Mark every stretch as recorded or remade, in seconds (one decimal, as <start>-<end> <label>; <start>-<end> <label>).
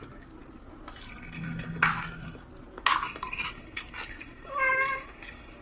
0.0-5.6 recorded